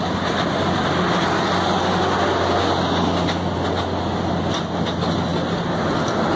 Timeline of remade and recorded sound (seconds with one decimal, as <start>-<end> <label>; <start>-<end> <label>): 0.0-6.4 recorded